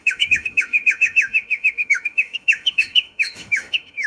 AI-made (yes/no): yes